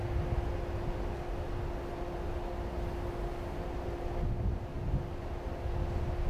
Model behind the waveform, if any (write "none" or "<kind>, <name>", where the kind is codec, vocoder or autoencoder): none